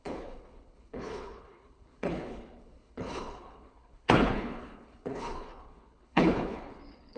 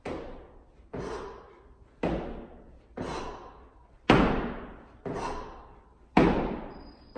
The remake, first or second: first